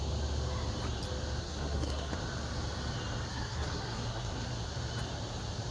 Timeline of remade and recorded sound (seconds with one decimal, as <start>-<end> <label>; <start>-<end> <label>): 0.0-1.4 recorded; 1.4-2.1 remade; 2.1-3.3 recorded; 3.3-4.5 remade; 4.5-5.7 recorded